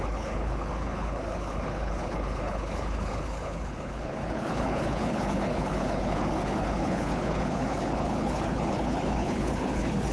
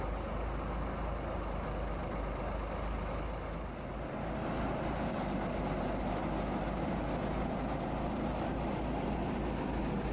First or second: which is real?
second